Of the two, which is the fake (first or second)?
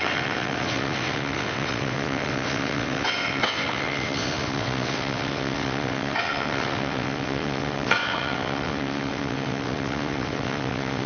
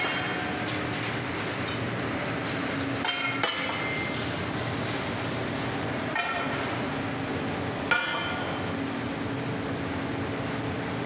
first